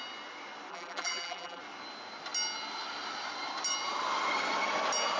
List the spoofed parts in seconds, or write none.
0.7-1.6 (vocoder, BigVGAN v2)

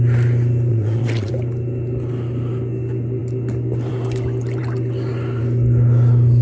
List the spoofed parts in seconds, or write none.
0.7-1.3 (vocoder, Vocos)

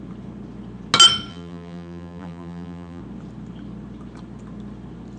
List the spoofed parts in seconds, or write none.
1.3-3.0 (vocoder, BigVGAN v2)

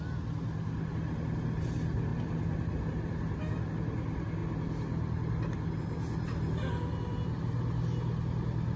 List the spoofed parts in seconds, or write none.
none